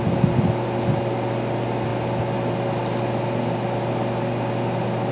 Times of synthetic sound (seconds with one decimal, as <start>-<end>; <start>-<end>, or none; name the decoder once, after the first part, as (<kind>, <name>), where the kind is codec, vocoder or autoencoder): none